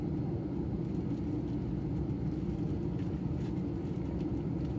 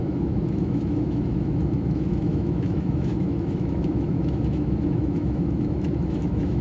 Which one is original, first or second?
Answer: first